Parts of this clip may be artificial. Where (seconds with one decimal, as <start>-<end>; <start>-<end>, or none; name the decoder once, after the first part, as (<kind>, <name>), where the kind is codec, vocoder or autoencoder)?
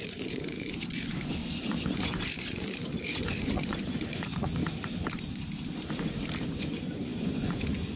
0.0-4.6 (vocoder, Vocos); 6.5-8.0